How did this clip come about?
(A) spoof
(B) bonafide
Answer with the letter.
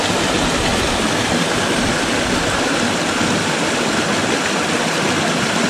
B